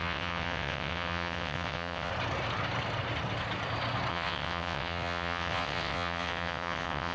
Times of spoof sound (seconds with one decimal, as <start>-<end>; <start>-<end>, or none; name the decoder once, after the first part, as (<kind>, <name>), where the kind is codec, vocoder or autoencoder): 0.0-2.1 (vocoder, WaveNeXt); 4.1-7.1